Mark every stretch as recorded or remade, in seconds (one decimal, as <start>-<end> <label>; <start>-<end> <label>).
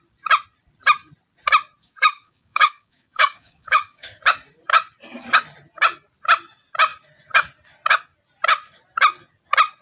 0.0-1.8 recorded; 1.8-4.2 remade; 4.2-9.8 recorded